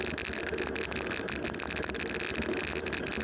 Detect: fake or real real